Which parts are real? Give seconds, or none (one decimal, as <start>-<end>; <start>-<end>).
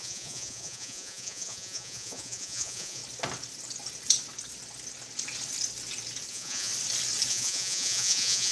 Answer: 3.0-6.3; 6.7-7.3